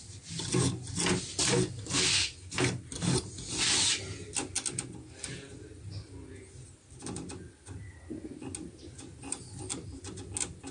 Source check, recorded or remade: recorded